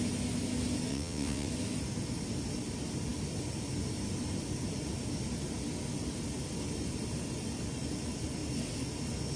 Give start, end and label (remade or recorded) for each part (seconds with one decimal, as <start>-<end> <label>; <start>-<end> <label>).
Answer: 0.0-0.9 recorded; 0.9-1.5 remade; 1.5-9.4 recorded